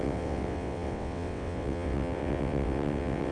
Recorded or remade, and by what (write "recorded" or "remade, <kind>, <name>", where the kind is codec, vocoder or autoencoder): remade, vocoder, WaveNeXt